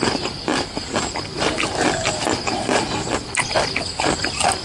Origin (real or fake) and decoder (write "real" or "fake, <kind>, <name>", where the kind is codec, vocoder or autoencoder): real